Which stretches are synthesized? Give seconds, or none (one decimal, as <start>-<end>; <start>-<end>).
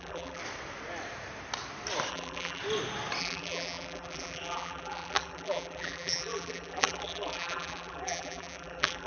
0.0-0.4; 2.1-2.6; 3.2-9.1